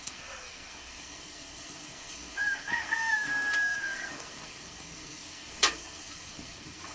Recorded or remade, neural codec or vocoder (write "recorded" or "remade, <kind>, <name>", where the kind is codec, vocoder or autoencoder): remade, codec, SNAC